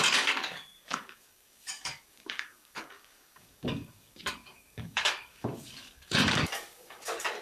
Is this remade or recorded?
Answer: remade